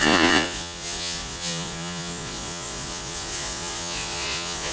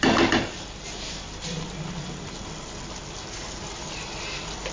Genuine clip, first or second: second